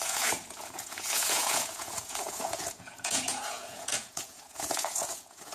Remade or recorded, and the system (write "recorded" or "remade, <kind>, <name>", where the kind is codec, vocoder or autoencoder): remade, vocoder, Vocos